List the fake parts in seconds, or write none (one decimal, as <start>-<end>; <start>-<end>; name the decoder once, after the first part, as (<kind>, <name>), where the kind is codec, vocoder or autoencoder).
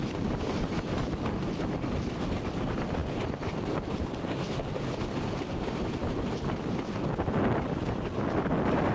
none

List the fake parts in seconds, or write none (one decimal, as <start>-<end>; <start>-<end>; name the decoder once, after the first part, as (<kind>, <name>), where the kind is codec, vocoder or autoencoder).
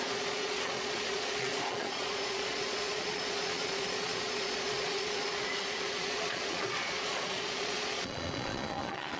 0.0-9.2 (vocoder, Vocos)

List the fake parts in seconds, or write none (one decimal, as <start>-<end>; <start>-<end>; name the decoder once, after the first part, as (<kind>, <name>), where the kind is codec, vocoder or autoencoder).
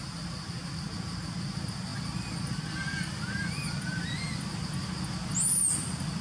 none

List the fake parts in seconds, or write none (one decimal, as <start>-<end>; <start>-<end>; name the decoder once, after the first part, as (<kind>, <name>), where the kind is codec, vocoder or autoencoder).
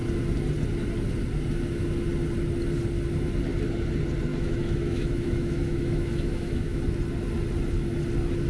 4.3-6.8 (autoencoder, DAC-VAE)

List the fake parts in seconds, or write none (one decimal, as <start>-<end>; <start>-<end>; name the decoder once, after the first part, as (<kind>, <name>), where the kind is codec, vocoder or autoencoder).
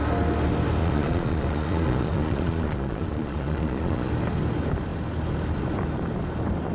0.8-4.1 (vocoder, Vocos)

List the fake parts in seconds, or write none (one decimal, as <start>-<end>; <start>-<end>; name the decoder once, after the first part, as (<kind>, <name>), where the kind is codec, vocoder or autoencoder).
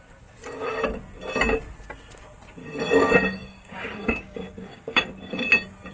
2.6-5.1 (codec, DAC)